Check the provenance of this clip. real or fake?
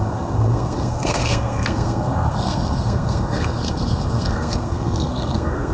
fake